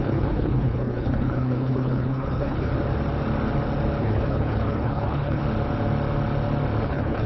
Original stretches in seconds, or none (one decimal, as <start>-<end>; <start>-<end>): 2.7-4.0; 5.4-6.8